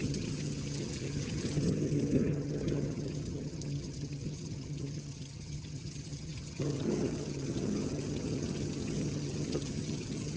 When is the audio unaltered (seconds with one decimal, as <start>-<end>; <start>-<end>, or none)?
none